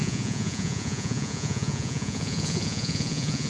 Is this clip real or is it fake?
fake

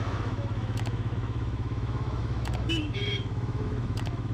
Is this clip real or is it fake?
fake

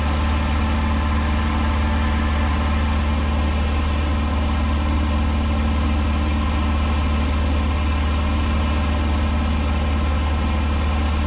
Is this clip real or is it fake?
real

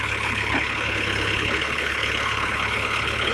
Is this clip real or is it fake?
fake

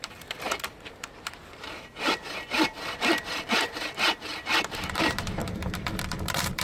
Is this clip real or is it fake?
fake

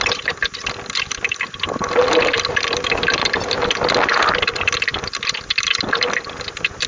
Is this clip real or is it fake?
real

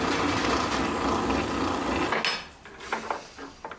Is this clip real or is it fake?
real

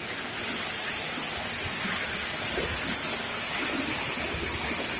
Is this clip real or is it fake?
real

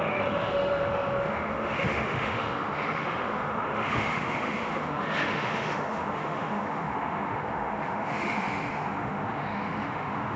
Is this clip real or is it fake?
fake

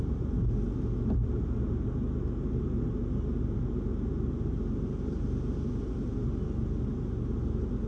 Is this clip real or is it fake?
real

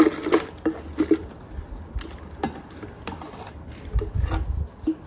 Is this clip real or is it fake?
real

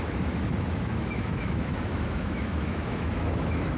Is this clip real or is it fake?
fake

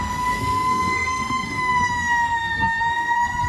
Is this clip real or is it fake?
fake